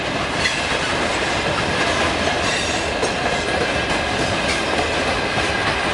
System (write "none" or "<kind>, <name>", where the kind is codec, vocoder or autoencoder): none